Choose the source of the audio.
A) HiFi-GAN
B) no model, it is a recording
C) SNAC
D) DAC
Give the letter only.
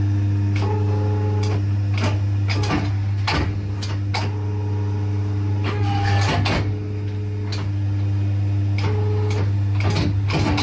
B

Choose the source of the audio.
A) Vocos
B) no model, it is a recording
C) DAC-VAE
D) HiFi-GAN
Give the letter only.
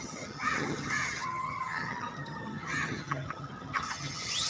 D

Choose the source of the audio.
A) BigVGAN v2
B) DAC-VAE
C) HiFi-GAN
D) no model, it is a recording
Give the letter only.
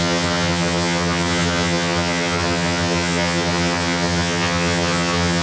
C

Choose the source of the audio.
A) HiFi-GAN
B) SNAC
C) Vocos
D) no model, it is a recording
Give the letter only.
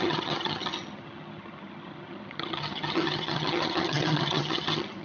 A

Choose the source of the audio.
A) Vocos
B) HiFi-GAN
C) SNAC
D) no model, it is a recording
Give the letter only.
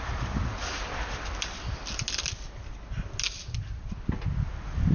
D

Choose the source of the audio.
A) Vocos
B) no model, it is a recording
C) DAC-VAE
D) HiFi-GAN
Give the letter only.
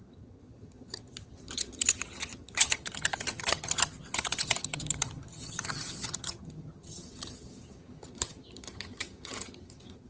D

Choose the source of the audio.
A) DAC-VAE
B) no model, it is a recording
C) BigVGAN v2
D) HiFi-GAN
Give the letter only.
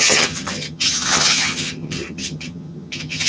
D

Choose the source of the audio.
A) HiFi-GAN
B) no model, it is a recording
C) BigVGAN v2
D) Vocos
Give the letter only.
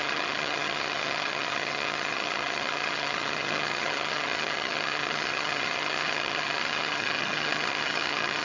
A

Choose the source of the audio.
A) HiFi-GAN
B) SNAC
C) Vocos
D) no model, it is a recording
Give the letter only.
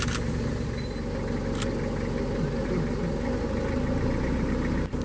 D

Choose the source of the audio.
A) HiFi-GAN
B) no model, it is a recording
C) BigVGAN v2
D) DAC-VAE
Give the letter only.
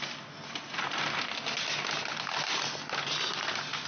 B